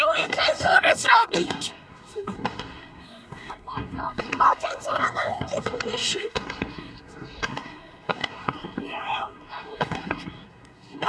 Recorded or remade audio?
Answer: remade